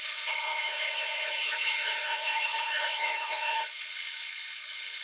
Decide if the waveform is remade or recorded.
remade